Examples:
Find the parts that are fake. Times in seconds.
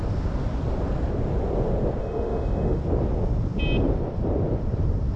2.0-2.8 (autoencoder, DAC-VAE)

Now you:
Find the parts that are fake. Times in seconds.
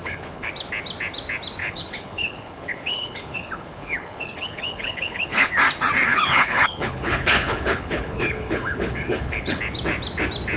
0.0-0.5 (codec, HILCodec); 1.6-5.5; 6.1-9.6